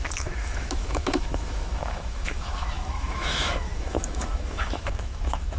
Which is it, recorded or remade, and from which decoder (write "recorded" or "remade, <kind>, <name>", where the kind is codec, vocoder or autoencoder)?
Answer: remade, autoencoder, DAC-VAE